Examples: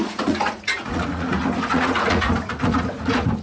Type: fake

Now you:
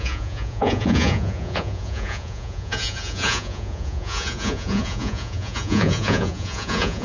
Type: fake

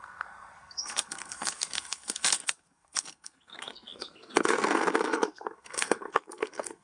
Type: fake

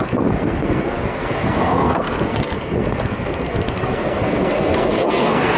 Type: fake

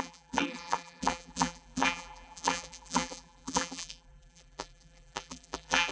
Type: fake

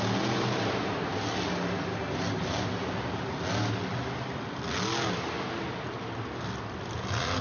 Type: real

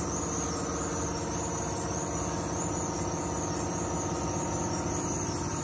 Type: real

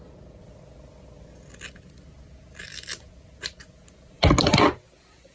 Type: real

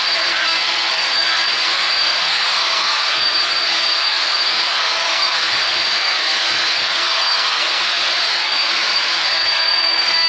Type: fake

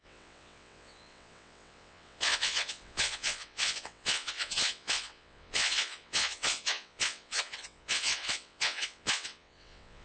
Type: fake